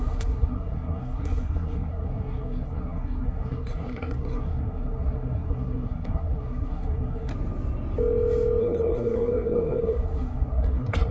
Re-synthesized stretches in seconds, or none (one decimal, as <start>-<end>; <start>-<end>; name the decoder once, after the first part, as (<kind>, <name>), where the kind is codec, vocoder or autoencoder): 0.0-7.3 (codec, SNAC); 8.6-11.1

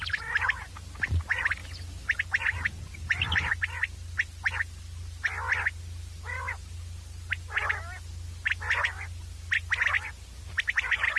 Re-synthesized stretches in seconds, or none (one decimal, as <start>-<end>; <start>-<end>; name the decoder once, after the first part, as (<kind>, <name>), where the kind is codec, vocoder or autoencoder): none

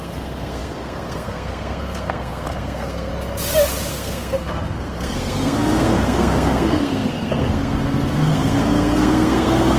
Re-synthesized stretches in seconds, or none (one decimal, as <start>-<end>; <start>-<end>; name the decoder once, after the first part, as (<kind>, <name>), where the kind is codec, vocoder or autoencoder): 0.0-3.1 (codec, SNAC); 3.9-9.8

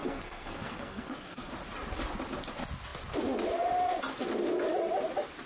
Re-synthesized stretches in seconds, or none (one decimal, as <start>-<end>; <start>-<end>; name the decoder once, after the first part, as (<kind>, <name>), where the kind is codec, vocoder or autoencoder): 0.0-1.5 (codec, SNAC)

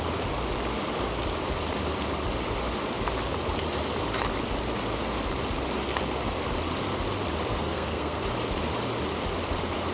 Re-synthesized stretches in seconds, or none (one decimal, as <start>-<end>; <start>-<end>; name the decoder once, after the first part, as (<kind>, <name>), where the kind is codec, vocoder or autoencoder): 7.5-8.2 (codec, SNAC)

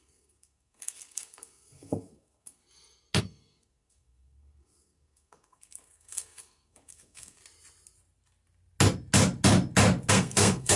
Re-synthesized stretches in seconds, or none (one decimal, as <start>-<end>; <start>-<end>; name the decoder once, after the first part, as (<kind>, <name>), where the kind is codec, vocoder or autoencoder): 0.0-2.6 (codec, SNAC); 3.2-7.4; 10.1-10.8